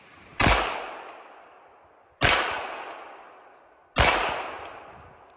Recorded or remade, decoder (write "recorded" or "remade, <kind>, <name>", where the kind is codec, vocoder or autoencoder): recorded